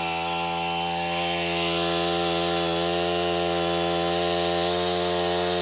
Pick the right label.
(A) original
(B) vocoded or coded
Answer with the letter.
A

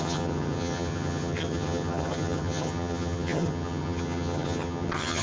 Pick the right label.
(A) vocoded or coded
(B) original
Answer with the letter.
A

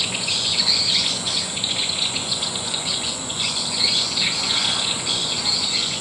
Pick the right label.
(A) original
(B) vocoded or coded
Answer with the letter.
B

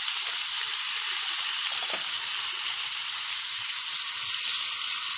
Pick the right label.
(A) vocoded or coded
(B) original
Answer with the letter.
A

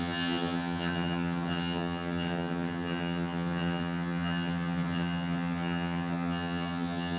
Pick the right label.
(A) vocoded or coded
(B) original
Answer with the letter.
A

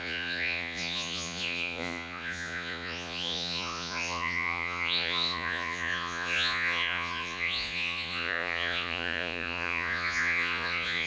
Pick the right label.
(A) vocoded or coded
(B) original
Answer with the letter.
A